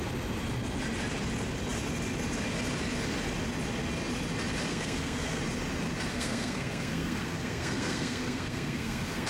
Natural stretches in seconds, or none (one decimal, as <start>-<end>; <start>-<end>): 0.0-4.7; 5.4-6.1